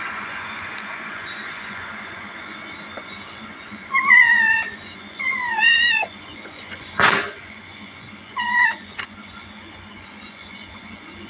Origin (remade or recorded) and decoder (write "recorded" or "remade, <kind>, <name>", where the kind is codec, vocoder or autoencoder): remade, vocoder, Vocos